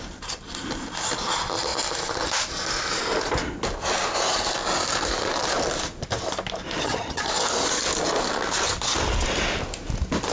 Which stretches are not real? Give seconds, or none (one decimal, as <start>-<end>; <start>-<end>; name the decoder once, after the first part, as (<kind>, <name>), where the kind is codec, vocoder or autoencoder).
6.8-7.3 (vocoder, HiFi-GAN)